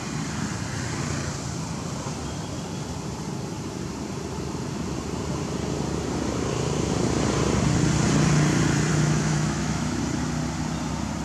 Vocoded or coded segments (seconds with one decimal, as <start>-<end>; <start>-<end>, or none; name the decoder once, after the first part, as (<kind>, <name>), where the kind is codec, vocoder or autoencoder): 8.9-10.0 (autoencoder, DAC-VAE)